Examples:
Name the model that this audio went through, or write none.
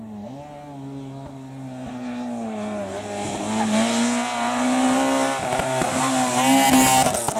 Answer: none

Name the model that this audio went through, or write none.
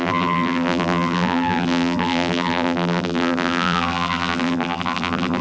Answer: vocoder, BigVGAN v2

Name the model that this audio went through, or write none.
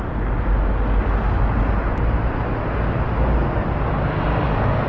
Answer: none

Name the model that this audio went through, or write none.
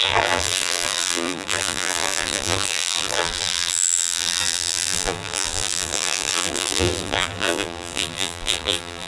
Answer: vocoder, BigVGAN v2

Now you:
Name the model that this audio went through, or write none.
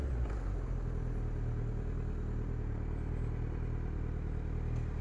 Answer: none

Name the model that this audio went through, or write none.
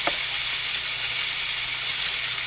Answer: none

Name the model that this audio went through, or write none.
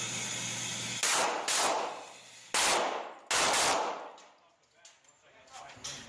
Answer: none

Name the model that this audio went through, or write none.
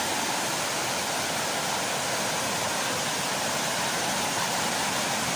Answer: none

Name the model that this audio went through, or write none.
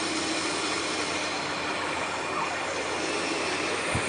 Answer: vocoder, BigVGAN v2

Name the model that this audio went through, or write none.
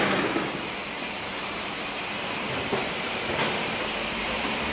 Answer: vocoder, BigVGAN v2